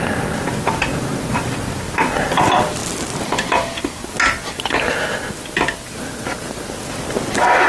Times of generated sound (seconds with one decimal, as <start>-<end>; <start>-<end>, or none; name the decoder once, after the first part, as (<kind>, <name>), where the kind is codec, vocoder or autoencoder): none